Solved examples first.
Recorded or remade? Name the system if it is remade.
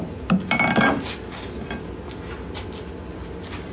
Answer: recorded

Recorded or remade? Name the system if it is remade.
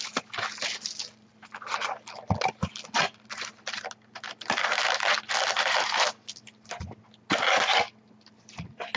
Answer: recorded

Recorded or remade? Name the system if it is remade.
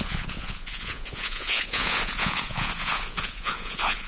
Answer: remade, vocoder, Vocos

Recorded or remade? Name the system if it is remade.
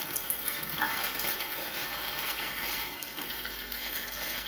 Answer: remade, codec, SNAC